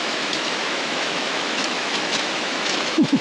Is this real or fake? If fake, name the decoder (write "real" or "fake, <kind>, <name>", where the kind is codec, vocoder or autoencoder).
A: fake, autoencoder, DAC-VAE